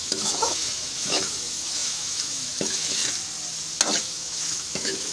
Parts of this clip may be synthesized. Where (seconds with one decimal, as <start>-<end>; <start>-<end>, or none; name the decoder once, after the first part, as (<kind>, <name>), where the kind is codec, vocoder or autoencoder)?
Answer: 0.0-3.0 (autoencoder, DAC-VAE); 4.0-5.1